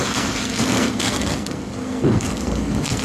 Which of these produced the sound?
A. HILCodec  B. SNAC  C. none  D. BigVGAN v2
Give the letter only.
B